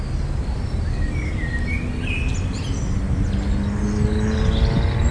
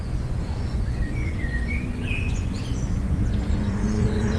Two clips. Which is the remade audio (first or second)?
second